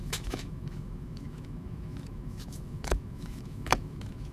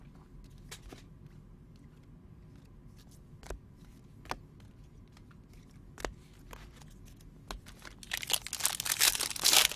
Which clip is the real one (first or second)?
second